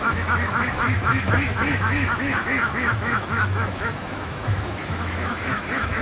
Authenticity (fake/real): fake